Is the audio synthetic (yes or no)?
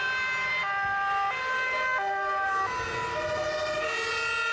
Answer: no